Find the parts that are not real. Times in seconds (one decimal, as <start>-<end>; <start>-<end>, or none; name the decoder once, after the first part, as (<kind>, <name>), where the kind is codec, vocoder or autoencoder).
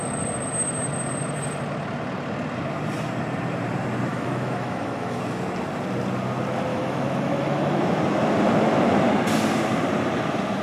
4.1-5.2 (autoencoder, DAC-VAE); 6.7-7.8